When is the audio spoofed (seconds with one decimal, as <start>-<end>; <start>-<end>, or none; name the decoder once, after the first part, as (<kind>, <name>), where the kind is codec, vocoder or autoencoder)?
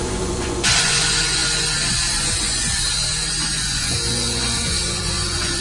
0.0-5.6 (vocoder, Vocos)